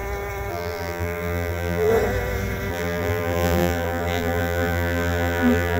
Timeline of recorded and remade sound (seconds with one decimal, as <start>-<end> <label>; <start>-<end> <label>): 0.0-0.5 recorded; 0.5-1.9 remade; 1.9-2.7 recorded; 2.7-5.8 remade